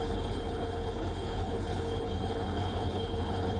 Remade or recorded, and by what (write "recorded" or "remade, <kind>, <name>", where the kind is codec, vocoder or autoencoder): remade, codec, HILCodec